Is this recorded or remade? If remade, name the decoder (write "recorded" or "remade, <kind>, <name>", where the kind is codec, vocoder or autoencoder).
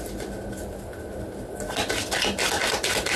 recorded